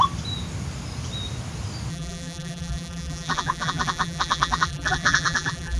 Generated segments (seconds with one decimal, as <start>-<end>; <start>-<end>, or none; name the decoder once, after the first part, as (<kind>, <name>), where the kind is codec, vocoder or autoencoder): 1.9-5.8 (vocoder, BigVGAN v2)